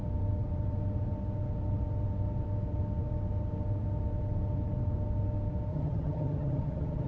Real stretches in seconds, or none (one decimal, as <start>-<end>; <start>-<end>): 0.0-5.7